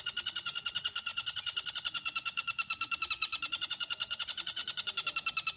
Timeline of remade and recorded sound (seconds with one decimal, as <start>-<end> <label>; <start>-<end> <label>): 0.0-4.6 remade; 4.6-5.6 recorded